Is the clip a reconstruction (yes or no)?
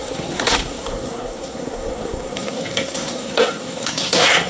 yes